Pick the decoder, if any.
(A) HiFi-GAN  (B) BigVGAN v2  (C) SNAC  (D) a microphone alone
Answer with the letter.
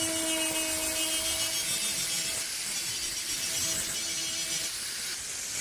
D